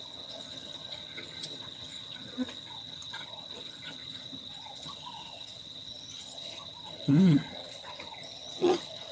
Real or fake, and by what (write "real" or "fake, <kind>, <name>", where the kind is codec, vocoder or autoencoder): fake, vocoder, HiFi-GAN